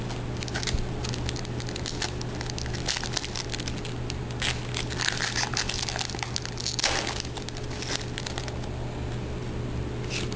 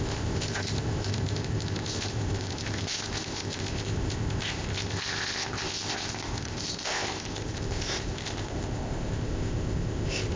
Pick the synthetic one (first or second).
second